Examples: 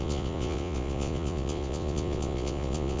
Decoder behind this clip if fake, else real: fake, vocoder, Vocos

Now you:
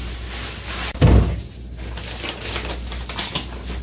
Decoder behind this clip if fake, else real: real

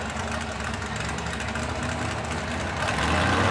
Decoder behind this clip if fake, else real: real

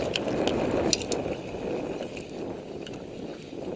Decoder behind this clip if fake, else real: real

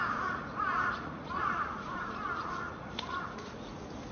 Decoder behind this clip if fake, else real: fake, vocoder, Vocos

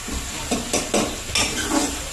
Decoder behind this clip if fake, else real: real